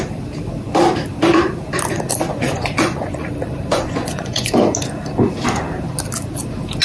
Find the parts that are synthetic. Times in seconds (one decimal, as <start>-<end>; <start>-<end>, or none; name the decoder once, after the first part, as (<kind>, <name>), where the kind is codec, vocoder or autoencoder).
2.3-3.3 (vocoder, Vocos); 3.7-4.5